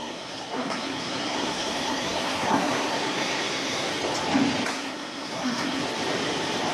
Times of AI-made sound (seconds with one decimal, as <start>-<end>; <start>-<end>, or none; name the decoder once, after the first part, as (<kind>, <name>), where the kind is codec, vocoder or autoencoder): 0.0-3.9 (codec, SNAC); 4.7-5.8